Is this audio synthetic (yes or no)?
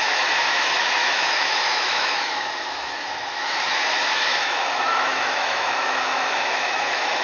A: yes